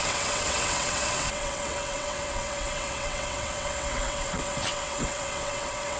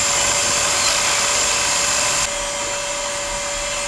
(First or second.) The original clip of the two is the second